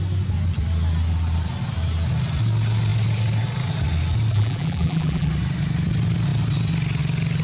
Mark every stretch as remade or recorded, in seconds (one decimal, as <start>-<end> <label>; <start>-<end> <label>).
0.0-4.3 recorded; 4.3-5.3 remade; 5.3-7.4 recorded